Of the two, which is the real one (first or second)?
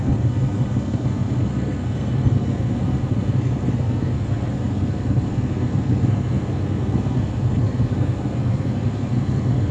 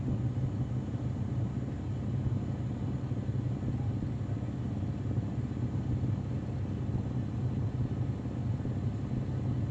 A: second